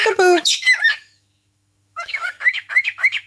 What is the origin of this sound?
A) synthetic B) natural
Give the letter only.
A